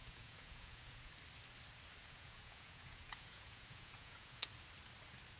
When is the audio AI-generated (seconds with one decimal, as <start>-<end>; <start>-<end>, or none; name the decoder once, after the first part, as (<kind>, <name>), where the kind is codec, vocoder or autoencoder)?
0.0-1.1 (vocoder, Vocos); 2.0-4.5